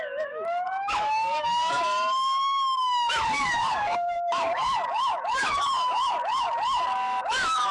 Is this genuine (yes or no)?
no